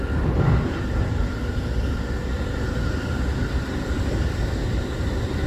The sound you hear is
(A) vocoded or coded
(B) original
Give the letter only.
A